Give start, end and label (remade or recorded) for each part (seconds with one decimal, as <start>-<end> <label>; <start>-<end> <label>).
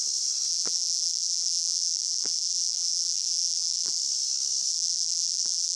0.0-0.5 recorded; 0.5-4.0 remade; 4.0-4.7 recorded; 4.7-5.8 remade